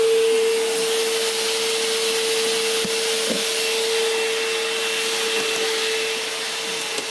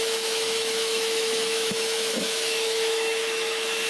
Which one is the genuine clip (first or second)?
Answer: first